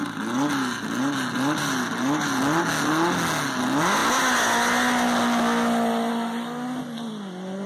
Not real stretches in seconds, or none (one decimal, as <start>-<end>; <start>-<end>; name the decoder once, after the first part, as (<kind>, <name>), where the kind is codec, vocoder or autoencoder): none